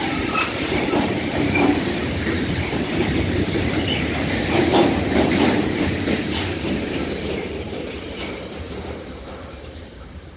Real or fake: fake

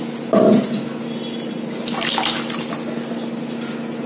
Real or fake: real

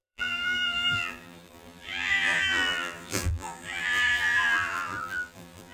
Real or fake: fake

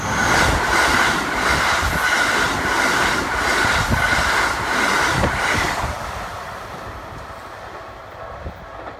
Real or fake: real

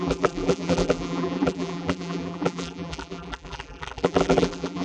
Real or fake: fake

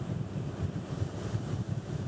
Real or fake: fake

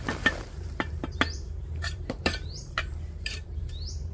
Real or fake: fake